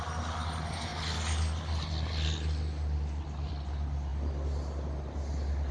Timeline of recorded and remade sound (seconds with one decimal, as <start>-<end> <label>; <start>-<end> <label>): 0.0-5.7 recorded